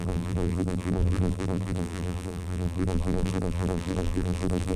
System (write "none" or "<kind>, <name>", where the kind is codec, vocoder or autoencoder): vocoder, BigVGAN v2